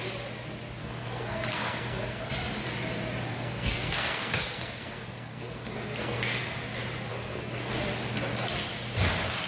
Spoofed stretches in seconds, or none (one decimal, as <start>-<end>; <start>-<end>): 0.8-2.2; 3.3-6.4; 7.1-7.7